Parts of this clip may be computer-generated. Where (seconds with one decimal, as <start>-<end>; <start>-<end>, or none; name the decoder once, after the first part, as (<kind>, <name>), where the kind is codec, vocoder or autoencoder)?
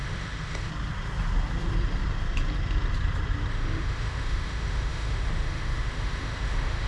0.0-0.7 (autoencoder, DAC-VAE); 3.5-6.9